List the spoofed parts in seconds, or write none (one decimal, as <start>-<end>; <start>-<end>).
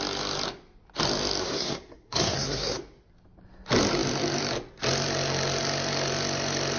1.4-2.8